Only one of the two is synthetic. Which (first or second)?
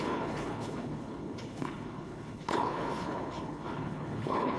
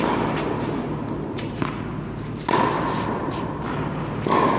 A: first